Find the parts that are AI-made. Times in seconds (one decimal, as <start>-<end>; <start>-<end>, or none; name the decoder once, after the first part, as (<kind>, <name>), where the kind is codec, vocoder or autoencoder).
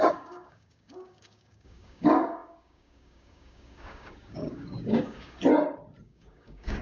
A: 0.0-5.5 (codec, DAC); 6.0-6.8